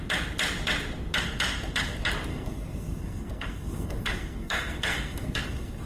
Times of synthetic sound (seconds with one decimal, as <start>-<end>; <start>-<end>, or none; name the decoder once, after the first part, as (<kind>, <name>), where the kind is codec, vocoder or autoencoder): 2.3-5.9 (codec, SNAC)

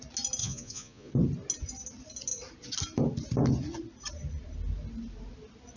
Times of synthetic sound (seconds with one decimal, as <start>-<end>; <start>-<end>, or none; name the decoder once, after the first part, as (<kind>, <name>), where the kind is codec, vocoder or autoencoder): 0.4-1.1 (vocoder, Vocos)

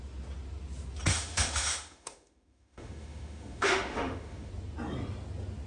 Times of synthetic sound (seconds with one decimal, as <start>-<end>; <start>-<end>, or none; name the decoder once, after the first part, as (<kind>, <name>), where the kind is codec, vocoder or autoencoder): 1.1-4.5 (autoencoder, DAC-VAE)

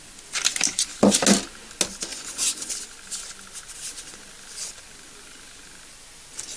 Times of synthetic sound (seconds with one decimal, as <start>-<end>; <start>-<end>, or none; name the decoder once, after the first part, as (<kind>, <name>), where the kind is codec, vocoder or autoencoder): 2.1-2.7 (vocoder, Vocos)

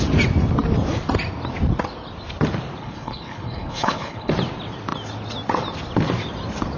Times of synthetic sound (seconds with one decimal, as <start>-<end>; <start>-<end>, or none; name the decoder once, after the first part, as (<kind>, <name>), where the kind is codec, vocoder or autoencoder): 2.8-4.3 (codec, HILCodec)